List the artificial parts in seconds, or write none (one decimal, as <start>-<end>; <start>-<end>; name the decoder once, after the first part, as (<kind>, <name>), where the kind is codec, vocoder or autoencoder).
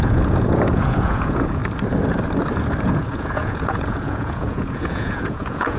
0.0-1.6 (vocoder, Vocos); 2.8-5.8